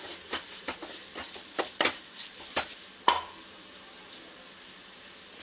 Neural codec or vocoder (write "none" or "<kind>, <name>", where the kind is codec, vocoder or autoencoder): none